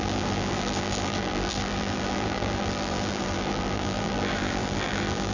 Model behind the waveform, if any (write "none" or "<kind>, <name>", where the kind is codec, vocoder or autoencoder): vocoder, BigVGAN v2